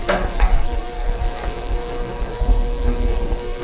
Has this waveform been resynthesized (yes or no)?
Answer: yes